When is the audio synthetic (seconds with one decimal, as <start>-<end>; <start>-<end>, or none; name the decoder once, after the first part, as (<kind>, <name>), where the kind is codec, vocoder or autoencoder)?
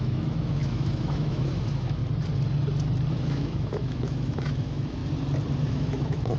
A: 0.0-2.0 (autoencoder, DAC-VAE); 3.1-5.0; 5.7-6.4